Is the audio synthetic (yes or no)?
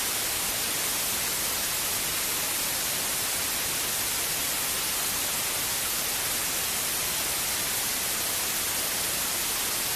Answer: no